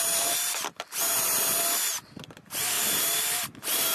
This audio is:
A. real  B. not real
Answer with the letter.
B